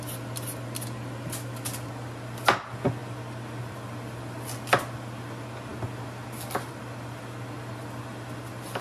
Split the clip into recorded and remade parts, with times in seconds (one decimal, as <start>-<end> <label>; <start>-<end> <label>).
0.0-8.8 recorded